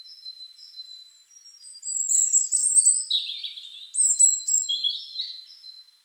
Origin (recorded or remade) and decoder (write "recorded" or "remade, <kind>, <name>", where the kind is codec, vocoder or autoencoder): recorded